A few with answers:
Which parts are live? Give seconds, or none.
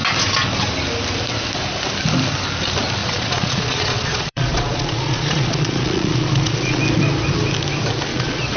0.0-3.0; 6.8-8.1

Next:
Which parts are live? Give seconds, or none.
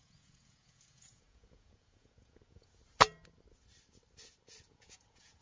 2.8-4.7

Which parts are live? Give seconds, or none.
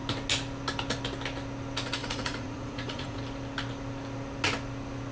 0.0-2.0; 3.2-5.1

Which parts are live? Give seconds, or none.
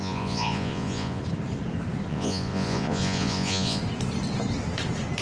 1.2-2.1; 3.8-5.2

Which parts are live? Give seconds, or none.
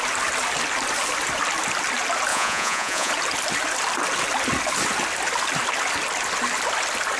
0.0-2.3; 3.1-7.2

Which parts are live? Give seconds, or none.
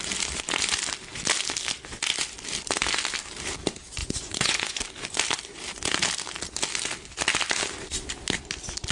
0.0-4.0; 4.8-8.9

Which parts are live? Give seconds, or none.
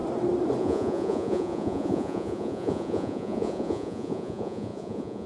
0.0-0.6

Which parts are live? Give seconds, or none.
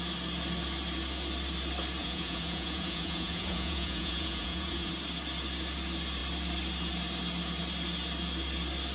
0.0-2.0; 4.9-8.9